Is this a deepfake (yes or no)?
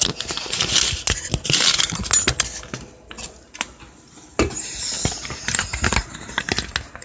no